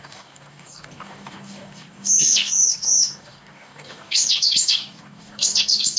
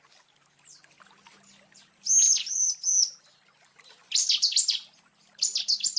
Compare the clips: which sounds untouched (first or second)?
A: second